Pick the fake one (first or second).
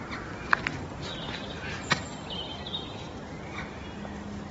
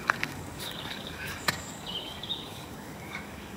second